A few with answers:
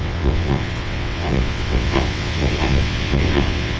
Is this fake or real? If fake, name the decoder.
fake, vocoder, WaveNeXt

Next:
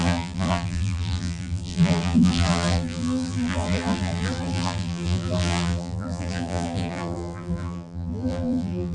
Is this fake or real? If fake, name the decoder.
fake, vocoder, BigVGAN v2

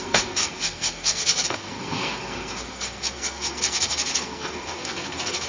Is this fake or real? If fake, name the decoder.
fake, codec, SNAC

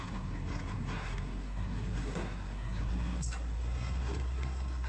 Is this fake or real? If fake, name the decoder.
fake, codec, SNAC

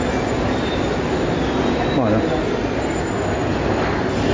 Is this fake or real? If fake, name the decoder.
real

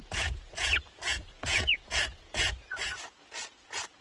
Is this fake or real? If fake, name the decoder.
fake, vocoder, Vocos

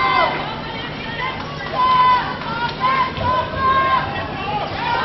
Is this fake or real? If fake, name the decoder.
real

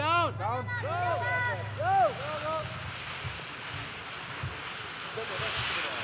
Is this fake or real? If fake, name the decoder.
real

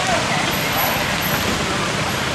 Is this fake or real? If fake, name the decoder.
real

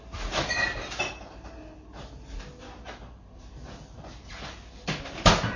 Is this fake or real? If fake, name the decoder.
real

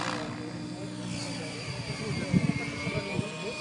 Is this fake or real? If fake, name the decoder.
real